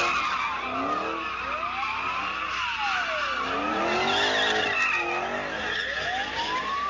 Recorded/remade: recorded